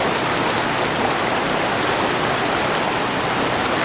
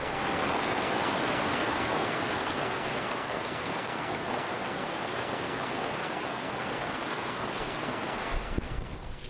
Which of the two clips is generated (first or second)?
second